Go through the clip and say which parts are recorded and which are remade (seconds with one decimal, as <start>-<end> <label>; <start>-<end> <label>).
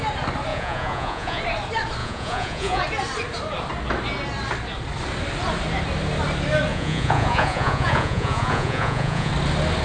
0.0-0.5 recorded; 0.5-1.4 remade; 1.4-2.0 recorded; 2.0-2.8 remade; 2.8-6.7 recorded; 6.7-9.3 remade; 9.3-9.8 recorded